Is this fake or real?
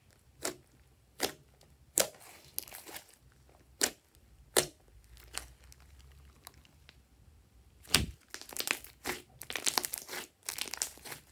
real